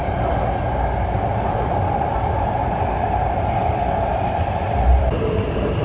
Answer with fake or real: real